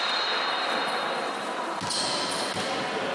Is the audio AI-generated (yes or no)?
no